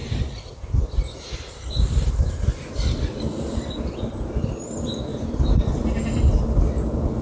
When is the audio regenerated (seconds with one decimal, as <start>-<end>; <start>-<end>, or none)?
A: 0.0-2.3; 5.1-6.2